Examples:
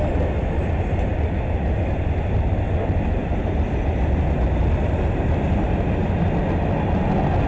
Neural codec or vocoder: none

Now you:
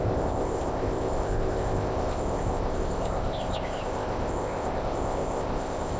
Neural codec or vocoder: codec, ZipCodec